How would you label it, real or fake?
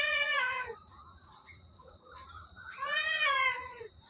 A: fake